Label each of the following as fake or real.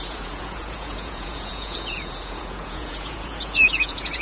fake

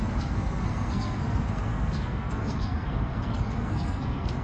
fake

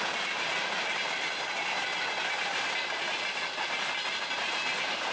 real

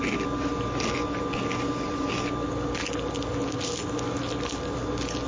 real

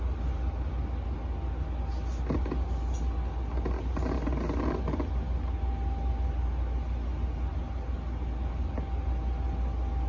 real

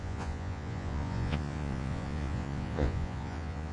fake